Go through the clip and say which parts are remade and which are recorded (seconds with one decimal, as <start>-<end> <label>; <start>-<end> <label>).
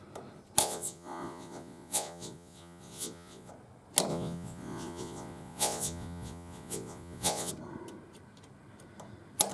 0.0-0.6 recorded; 0.6-3.5 remade; 3.5-4.1 recorded; 4.1-7.5 remade; 7.5-9.5 recorded